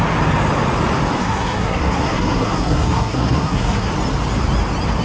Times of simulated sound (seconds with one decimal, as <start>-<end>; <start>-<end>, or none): 1.2-3.9